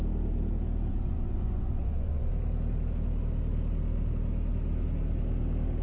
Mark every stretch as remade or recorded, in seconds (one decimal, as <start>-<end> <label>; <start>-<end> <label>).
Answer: 0.0-0.9 recorded; 0.9-2.3 remade; 2.3-5.8 recorded